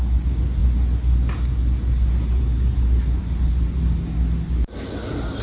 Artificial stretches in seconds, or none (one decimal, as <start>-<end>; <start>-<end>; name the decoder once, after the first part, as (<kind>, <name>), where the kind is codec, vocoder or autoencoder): none